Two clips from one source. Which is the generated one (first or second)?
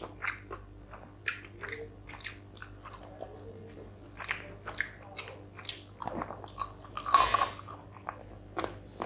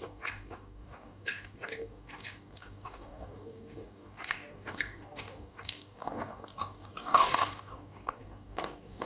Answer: second